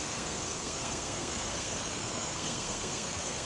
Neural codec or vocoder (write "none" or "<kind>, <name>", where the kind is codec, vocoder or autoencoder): codec, SNAC